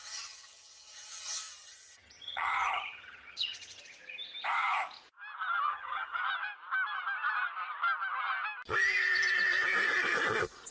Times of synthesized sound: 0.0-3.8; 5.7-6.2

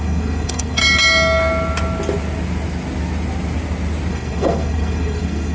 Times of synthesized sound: 0.0-0.8; 4.1-5.5

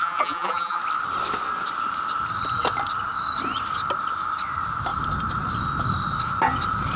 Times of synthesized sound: 0.0-0.8